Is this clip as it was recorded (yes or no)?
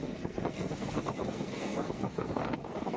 no